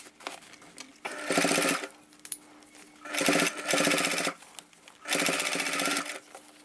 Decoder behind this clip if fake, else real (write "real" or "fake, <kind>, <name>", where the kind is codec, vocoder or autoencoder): real